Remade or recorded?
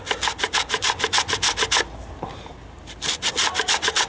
recorded